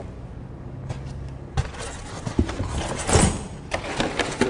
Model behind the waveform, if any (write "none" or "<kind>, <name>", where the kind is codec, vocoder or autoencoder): none